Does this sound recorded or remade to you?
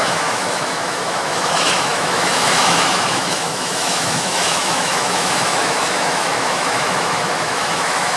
remade